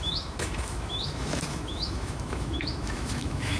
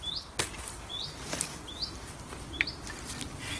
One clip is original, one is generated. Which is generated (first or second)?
first